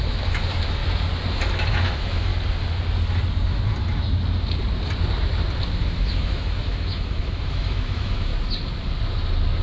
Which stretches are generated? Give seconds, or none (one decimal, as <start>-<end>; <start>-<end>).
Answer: 0.0-0.8; 1.5-2.3; 5.6-8.3